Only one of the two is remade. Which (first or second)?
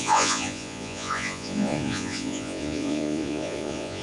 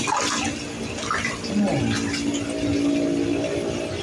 first